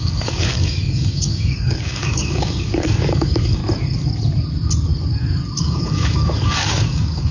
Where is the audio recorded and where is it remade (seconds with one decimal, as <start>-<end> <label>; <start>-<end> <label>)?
0.0-3.6 remade; 3.6-5.6 recorded; 5.6-7.3 remade